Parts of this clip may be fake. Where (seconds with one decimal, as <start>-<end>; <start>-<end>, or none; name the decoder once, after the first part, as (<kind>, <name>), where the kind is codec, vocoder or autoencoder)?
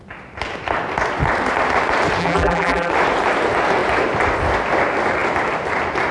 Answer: 2.2-2.9 (vocoder, BigVGAN v2)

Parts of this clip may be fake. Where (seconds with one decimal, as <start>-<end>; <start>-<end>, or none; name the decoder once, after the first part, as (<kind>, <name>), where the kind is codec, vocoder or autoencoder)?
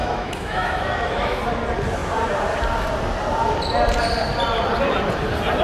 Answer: 0.0-1.4 (autoencoder, DAC-VAE)